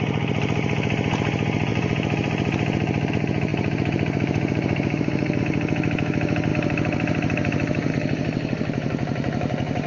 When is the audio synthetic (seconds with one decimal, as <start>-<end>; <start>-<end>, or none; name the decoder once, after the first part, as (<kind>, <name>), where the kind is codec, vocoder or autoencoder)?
1.7-3.1 (vocoder, BigVGAN v2); 3.5-5.4; 6.5-7.9